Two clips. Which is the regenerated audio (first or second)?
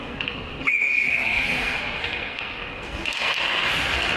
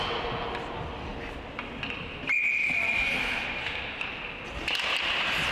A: first